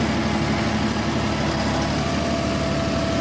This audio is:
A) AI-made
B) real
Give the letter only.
B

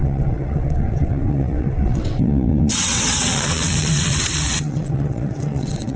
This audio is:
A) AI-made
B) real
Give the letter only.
A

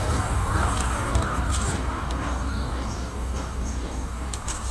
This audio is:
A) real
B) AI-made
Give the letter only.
B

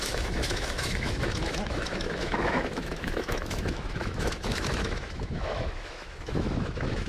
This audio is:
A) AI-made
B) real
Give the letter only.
A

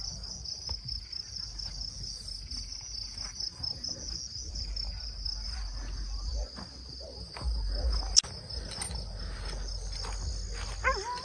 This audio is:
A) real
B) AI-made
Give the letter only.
A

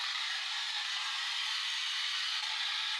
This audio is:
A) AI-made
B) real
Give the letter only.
B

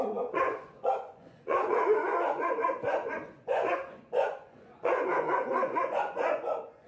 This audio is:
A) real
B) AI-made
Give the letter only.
B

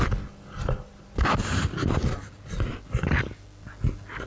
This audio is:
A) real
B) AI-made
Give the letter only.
A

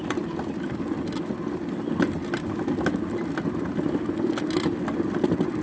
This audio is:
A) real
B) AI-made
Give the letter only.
A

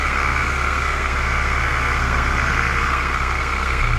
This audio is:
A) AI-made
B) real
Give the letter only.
A